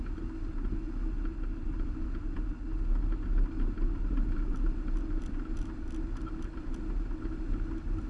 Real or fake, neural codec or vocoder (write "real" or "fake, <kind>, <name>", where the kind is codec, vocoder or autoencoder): real